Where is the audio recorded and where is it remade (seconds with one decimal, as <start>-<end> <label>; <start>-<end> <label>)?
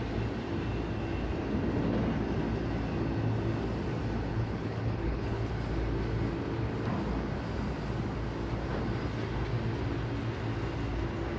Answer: 0.0-4.3 recorded; 4.3-5.5 remade; 5.5-11.4 recorded